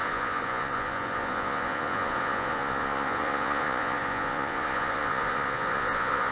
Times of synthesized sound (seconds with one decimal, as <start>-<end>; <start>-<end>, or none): 0.0-6.3

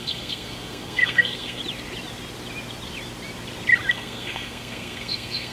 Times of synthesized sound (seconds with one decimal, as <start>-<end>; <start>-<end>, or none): 0.0-1.6; 3.9-5.5